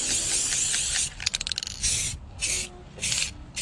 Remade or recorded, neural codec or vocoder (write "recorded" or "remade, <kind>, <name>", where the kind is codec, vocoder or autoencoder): recorded